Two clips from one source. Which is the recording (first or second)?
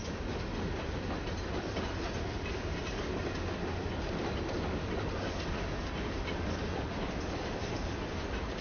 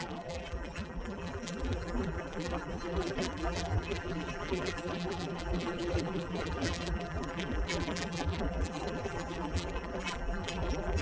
first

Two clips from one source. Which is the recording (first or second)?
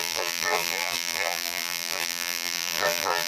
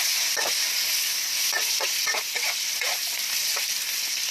second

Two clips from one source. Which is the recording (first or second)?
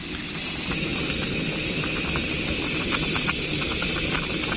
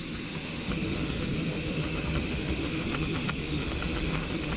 first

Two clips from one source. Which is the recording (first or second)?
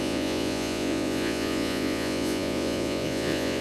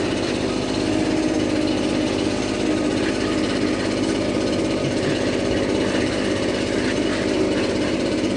second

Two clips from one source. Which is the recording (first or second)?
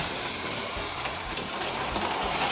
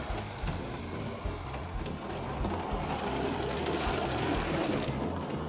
second